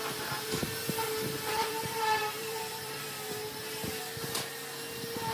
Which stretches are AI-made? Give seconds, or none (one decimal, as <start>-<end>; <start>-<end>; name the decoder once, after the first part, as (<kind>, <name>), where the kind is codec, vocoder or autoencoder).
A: 1.6-4.5 (vocoder, BigVGAN v2)